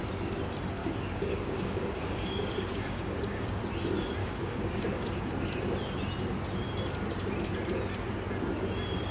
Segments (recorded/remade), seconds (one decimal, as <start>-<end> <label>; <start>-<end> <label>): 0.0-0.8 recorded; 0.8-3.6 remade; 3.6-4.2 recorded; 4.2-5.3 remade; 5.3-9.1 recorded